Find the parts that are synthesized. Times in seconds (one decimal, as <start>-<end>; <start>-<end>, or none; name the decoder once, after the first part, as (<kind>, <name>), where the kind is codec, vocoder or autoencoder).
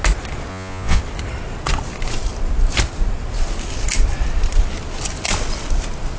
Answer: 0.5-1.0 (vocoder, Vocos)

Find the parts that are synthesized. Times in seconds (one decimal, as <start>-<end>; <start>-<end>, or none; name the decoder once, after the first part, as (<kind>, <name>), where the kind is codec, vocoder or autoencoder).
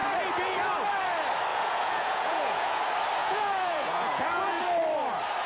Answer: 1.5-2.8 (vocoder, Vocos); 3.2-4.6